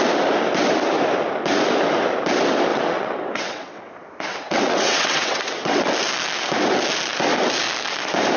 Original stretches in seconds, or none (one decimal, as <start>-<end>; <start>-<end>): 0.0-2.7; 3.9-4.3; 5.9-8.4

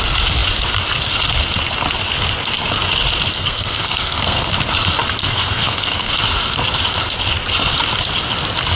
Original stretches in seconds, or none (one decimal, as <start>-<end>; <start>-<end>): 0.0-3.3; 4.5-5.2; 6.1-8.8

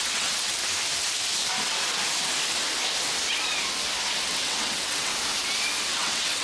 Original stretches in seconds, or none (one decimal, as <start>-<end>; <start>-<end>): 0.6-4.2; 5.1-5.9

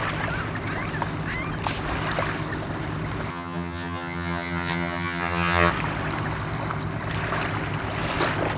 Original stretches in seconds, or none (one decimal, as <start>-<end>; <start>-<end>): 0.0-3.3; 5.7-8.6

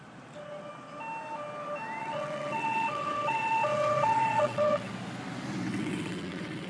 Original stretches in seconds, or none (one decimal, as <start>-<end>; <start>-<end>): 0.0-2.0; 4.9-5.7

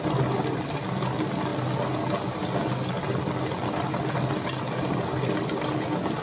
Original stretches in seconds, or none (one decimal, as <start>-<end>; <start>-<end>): 0.0-6.2

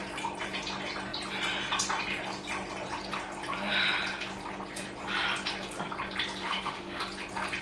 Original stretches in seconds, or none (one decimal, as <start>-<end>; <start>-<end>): 0.0-6.4; 7.0-7.6